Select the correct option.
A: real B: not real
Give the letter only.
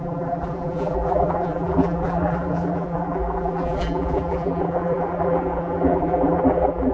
B